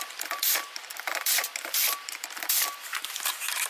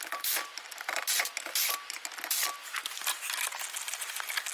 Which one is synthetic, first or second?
first